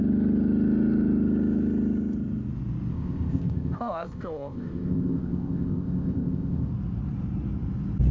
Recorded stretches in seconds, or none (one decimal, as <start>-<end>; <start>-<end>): 0.0-2.9; 6.7-8.1